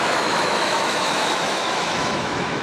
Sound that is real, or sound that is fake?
fake